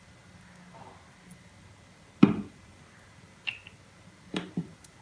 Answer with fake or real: real